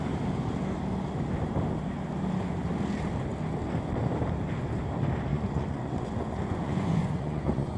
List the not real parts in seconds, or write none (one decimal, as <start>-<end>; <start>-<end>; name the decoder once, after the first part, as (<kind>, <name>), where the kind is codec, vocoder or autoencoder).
5.3-7.8 (vocoder, Vocos)